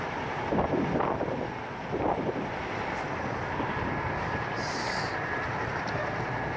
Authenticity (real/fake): real